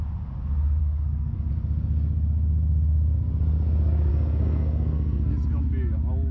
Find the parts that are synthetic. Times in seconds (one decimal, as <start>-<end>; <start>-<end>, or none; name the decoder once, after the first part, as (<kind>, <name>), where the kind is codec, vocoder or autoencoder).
0.8-1.5 (codec, SNAC); 4.1-5.3